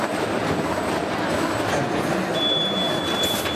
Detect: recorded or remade recorded